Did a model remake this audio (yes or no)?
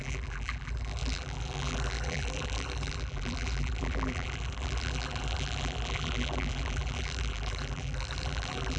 yes